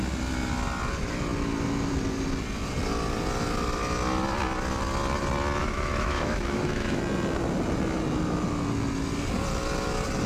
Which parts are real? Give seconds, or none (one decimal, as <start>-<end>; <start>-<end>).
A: 0.0-5.6; 7.0-10.3